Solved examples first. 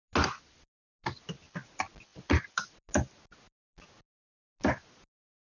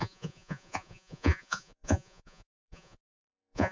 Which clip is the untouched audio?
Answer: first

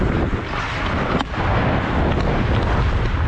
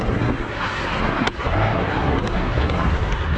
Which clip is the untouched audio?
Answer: first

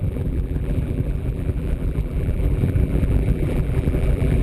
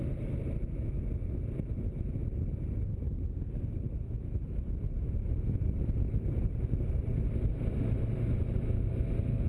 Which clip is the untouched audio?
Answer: second